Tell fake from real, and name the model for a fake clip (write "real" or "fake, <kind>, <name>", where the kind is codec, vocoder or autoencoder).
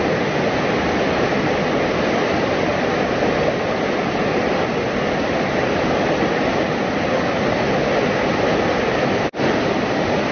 real